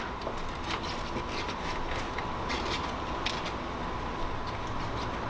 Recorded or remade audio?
recorded